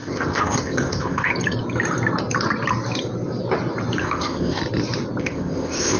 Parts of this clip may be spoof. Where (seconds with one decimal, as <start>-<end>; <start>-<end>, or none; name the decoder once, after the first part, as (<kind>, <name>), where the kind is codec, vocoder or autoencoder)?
0.0-1.3 (codec, ZipCodec); 4.0-4.6; 5.2-6.0